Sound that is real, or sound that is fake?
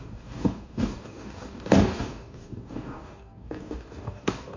fake